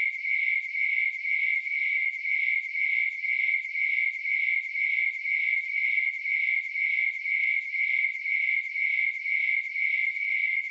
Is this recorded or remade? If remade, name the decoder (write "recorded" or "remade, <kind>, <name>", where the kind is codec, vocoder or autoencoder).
recorded